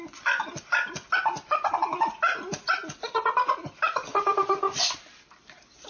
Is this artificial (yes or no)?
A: no